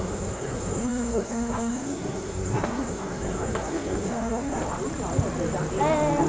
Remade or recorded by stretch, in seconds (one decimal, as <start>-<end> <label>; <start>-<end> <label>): 0.0-4.6 remade; 4.6-6.3 recorded